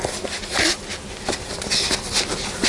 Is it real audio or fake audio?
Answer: real